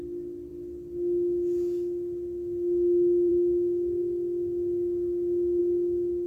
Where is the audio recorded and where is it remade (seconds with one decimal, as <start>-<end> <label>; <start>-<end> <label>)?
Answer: 0.0-6.3 recorded